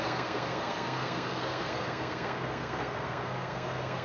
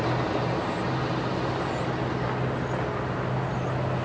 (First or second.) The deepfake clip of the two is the first